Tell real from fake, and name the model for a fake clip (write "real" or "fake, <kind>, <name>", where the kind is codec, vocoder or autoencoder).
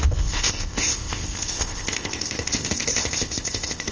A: fake, codec, ZipCodec